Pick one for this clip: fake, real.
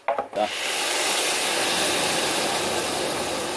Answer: real